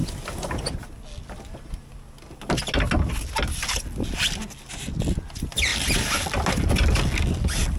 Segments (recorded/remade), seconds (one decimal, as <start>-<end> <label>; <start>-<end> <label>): 0.0-7.8 recorded